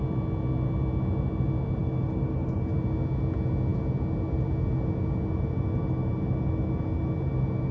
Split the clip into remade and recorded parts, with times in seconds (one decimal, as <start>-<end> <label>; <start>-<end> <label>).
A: 0.0-1.8 recorded; 1.8-2.6 remade; 2.6-7.7 recorded